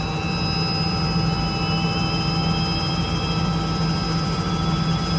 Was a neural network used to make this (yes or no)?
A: no